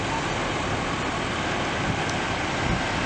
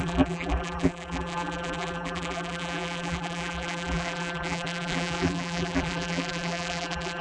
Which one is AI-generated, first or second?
second